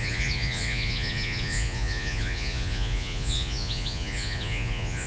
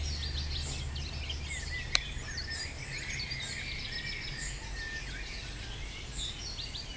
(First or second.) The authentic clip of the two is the second